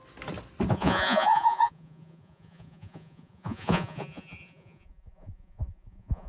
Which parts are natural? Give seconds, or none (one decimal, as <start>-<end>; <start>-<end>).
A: 0.0-0.7